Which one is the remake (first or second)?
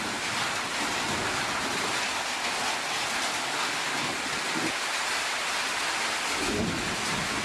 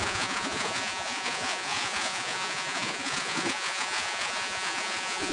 second